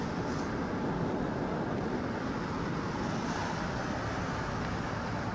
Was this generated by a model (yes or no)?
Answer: no